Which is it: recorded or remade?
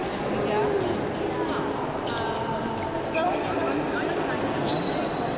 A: recorded